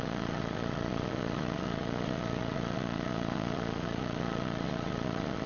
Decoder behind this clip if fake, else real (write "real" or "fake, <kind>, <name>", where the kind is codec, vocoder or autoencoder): fake, vocoder, Vocos